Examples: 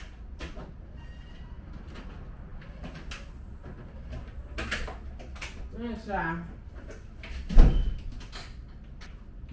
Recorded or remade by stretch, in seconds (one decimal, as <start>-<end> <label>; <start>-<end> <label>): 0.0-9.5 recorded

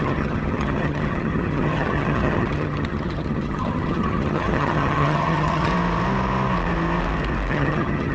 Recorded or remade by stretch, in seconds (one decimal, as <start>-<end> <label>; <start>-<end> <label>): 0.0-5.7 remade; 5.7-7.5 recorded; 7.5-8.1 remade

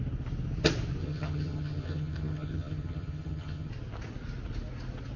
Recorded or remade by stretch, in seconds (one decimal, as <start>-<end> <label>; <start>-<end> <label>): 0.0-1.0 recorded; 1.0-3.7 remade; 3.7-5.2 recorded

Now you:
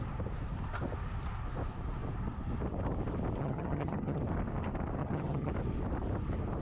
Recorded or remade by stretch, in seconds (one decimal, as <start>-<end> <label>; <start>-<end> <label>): 0.0-3.4 recorded; 3.4-4.2 remade; 4.2-5.0 recorded; 5.0-5.5 remade; 5.5-6.6 recorded